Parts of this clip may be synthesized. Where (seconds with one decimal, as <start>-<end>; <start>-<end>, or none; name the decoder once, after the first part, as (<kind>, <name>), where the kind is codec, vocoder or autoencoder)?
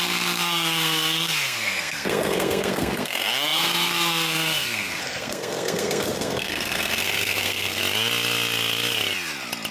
0.0-7.8 (codec, SNAC)